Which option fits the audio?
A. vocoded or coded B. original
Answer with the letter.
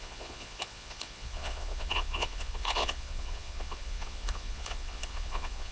A